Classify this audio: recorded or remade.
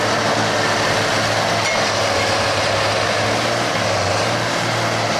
recorded